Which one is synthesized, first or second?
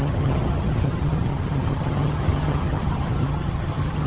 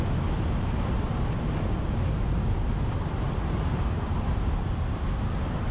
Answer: first